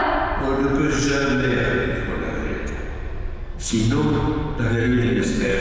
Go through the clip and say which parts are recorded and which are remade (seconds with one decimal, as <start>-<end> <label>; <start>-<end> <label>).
0.0-3.4 recorded; 3.4-3.8 remade; 3.8-4.7 recorded; 4.7-5.6 remade